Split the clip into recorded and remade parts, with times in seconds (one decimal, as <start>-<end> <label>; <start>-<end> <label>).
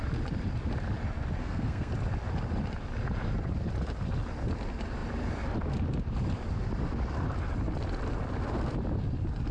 0.0-1.4 recorded; 1.4-1.9 remade; 1.9-9.5 recorded